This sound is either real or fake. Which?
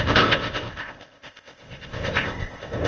fake